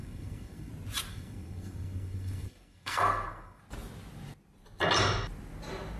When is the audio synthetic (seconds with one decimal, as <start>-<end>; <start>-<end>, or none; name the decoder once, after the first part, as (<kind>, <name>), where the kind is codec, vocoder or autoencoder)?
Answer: 0.0-0.7 (codec, SNAC); 1.1-3.6